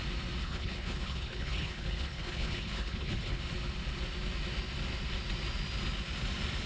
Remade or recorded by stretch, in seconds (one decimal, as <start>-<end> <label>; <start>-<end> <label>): 0.0-0.4 recorded; 0.4-3.4 remade; 3.4-6.7 recorded